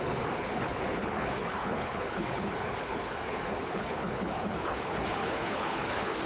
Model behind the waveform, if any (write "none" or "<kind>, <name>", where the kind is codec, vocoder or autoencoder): codec, HILCodec